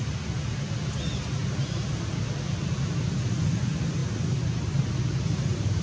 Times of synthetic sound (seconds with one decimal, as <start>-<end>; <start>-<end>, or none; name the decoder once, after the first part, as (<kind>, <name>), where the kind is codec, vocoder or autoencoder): none